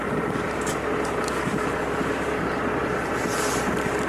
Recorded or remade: recorded